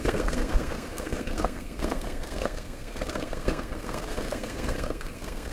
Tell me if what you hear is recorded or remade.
remade